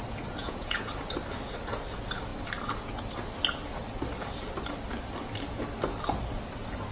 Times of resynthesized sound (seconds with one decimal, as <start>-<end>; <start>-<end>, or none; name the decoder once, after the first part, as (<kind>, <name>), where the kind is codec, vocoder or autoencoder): 0.4-0.9 (vocoder, Vocos)